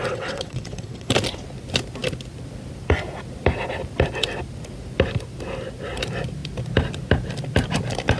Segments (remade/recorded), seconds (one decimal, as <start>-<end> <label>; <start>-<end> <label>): 0.0-1.1 remade; 1.1-8.2 recorded